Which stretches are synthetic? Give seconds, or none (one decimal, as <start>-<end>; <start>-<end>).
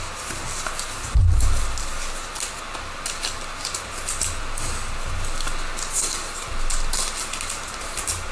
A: none